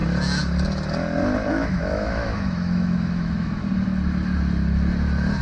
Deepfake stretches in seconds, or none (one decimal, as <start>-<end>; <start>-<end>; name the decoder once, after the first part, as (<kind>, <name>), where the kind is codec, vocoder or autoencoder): 1.5-3.6 (autoencoder, DAC-VAE)